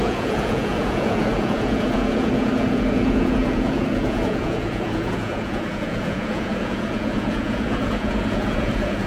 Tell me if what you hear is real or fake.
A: fake